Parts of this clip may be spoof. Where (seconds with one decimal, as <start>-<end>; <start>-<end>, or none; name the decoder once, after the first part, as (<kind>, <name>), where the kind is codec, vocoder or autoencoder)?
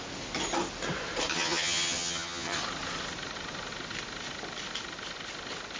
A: 1.3-2.6 (vocoder, HiFi-GAN)